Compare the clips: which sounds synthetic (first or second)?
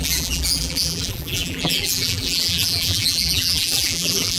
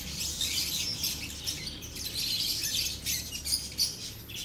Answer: first